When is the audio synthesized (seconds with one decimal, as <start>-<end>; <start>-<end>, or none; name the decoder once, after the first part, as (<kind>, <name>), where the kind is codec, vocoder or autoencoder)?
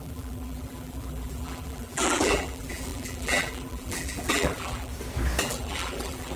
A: 0.0-4.9 (vocoder, BigVGAN v2); 5.4-6.4